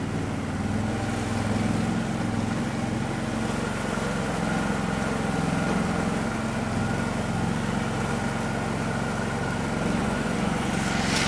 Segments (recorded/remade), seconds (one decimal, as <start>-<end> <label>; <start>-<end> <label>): 0.0-10.0 recorded; 10.0-10.7 remade; 10.7-11.3 recorded